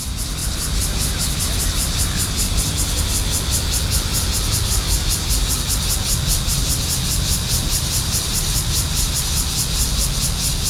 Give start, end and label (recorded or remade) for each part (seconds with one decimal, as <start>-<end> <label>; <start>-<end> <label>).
0.0-0.4 recorded; 0.4-3.0 remade; 3.0-6.5 recorded; 6.5-9.1 remade; 9.1-10.7 recorded